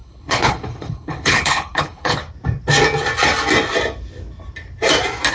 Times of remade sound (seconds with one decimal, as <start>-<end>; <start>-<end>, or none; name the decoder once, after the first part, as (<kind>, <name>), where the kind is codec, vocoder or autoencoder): 0.0-2.2 (codec, HILCodec)